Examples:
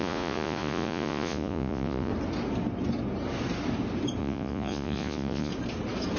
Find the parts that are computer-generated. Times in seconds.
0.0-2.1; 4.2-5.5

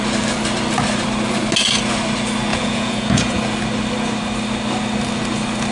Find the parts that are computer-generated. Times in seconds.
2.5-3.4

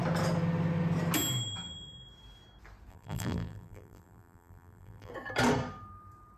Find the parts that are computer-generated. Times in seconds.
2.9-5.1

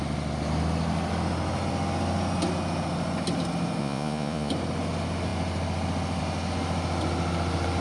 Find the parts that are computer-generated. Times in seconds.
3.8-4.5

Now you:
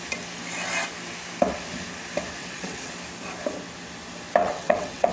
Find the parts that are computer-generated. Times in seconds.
2.4-2.9; 4.4-5.1

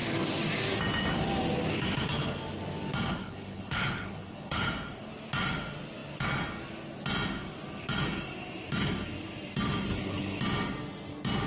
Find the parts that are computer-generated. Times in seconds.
3.2-4.6; 9.9-10.4

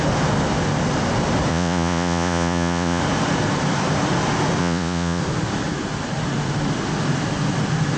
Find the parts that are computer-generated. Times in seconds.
1.5-3.0; 4.6-5.2